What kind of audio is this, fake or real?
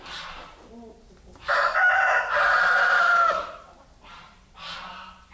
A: real